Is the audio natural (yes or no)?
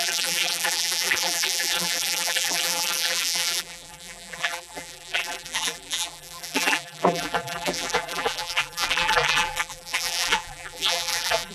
no